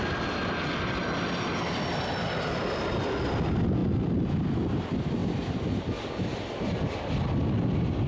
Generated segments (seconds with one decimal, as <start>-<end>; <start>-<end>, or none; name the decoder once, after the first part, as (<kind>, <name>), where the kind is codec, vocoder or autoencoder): none